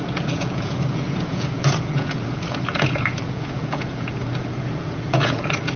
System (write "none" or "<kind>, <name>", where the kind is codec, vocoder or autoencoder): vocoder, Vocos